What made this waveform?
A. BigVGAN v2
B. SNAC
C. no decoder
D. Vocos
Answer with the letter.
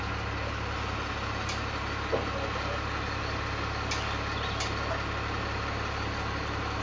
C